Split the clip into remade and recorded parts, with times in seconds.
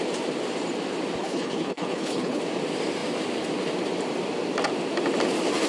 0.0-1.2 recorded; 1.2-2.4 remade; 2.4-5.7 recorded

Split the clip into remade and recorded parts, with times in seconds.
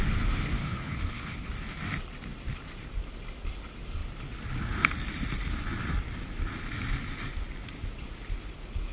0.0-0.6 recorded; 0.6-1.5 remade; 1.5-8.9 recorded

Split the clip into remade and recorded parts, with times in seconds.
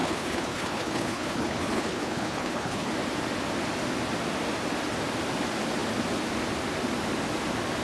0.0-2.9 remade; 2.9-7.8 recorded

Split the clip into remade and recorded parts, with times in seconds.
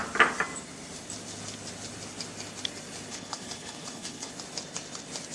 0.0-3.1 recorded; 3.1-4.3 remade; 4.3-5.3 recorded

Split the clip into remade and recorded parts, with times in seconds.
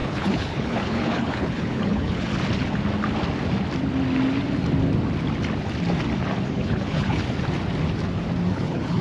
0.0-2.3 remade; 2.3-6.5 recorded; 6.5-7.2 remade; 7.2-8.5 recorded; 8.5-9.0 remade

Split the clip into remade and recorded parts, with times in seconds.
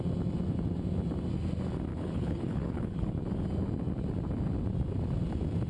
0.0-1.9 recorded; 1.9-3.1 remade; 3.1-5.7 recorded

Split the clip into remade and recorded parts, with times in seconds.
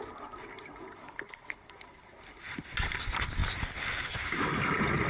0.0-1.0 recorded; 1.0-1.7 remade; 1.7-5.1 recorded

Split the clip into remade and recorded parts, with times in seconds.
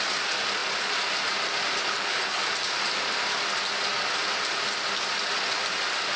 0.0-1.8 recorded; 1.8-2.4 remade; 2.4-6.2 recorded